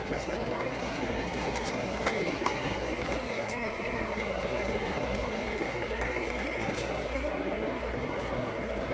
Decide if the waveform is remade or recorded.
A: remade